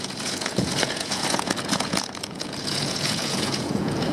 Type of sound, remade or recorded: remade